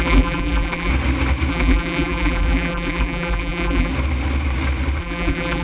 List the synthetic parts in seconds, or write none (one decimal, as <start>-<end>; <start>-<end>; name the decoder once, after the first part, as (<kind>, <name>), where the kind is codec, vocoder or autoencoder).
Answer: 0.0-0.9 (vocoder, BigVGAN v2); 1.5-3.9; 5.0-5.6